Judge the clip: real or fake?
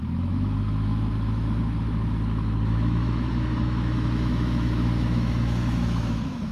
fake